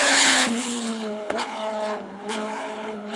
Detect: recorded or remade remade